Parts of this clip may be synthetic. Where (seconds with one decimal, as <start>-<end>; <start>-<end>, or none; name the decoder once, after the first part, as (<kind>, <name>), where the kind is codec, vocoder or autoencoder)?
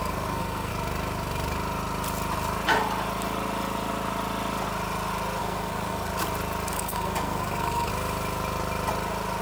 0.0-0.7 (codec, SNAC); 5.4-6.1; 6.7-7.9